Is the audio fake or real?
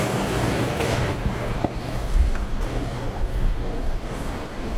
fake